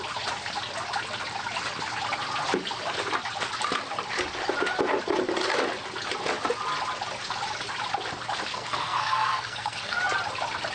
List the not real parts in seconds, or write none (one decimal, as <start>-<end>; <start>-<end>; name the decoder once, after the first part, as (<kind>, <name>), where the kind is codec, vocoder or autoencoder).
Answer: 8.5-10.0 (codec, SNAC)